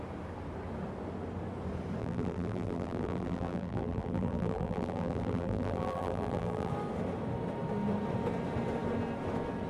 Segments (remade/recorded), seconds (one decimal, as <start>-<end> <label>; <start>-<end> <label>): 0.0-2.0 recorded; 2.0-6.7 remade; 6.7-9.7 recorded